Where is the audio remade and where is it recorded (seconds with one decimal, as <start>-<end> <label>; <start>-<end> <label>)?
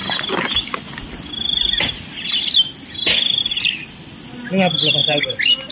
0.0-5.0 recorded; 5.0-5.7 remade